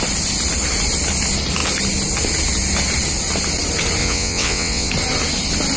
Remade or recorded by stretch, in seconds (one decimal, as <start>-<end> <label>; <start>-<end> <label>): 0.0-4.0 recorded; 4.0-4.9 remade; 4.9-5.8 recorded